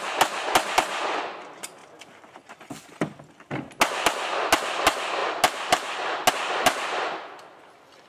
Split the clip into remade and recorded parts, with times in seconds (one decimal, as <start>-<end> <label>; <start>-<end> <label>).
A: 0.0-8.1 recorded